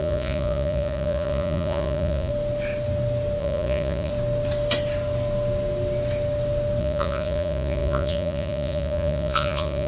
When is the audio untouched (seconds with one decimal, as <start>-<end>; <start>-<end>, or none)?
2.3-3.4; 4.1-6.8